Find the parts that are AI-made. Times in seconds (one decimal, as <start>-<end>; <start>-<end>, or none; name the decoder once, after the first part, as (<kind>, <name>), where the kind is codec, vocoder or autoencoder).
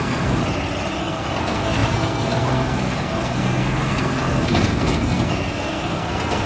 0.0-0.4 (codec, SNAC); 1.0-6.5